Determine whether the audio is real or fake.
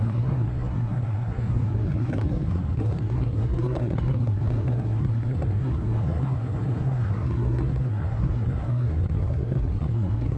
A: fake